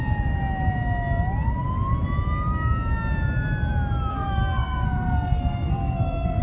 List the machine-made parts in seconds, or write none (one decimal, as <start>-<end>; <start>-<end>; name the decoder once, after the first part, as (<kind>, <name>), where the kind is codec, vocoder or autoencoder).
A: 4.1-6.4 (codec, SNAC)